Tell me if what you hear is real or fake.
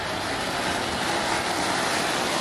fake